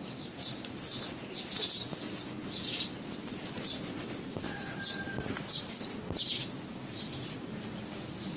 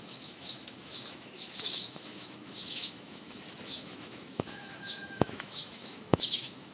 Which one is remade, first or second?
second